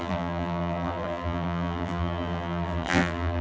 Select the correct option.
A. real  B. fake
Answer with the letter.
B